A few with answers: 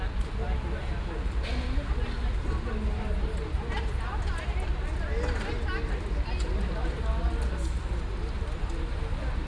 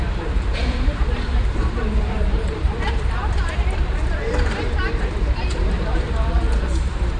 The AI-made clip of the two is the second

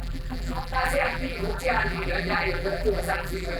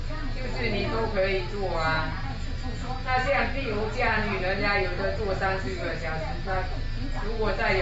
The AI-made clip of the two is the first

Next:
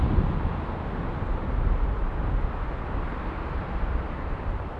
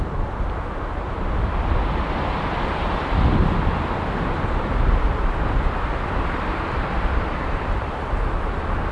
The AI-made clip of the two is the second